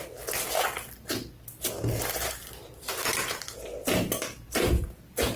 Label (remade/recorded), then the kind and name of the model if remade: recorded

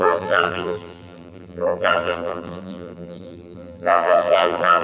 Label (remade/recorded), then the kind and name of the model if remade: remade, vocoder, BigVGAN v2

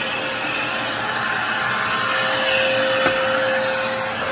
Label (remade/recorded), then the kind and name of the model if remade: recorded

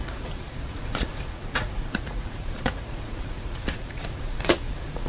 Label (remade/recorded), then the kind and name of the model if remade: remade, vocoder, Vocos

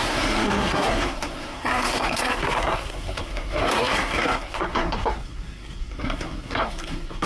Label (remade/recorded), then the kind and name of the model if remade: remade, codec, SNAC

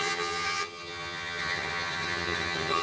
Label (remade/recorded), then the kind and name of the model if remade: remade, vocoder, HiFi-GAN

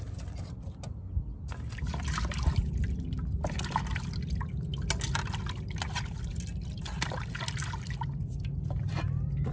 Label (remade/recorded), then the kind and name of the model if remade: recorded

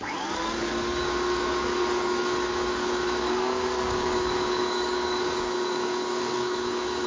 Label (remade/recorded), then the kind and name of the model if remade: remade, codec, DAC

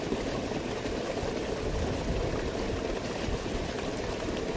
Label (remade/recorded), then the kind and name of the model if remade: recorded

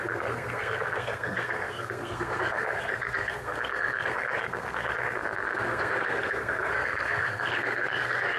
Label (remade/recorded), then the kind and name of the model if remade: remade, codec, SNAC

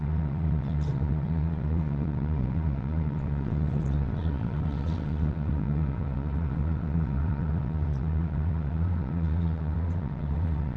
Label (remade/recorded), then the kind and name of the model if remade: remade, vocoder, WaveNeXt